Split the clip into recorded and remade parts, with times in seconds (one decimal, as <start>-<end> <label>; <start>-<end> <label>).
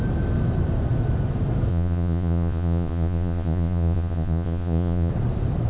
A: 0.0-1.7 recorded; 1.7-5.1 remade; 5.1-5.7 recorded